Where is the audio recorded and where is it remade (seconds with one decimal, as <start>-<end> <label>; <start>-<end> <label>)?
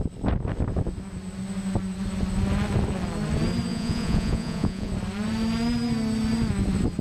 0.0-3.7 recorded; 3.7-4.9 remade; 4.9-7.0 recorded